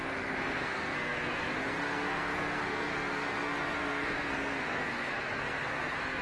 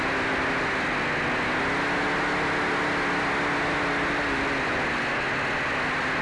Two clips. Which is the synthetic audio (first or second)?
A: first